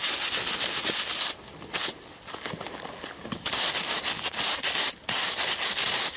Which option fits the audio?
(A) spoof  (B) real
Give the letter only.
B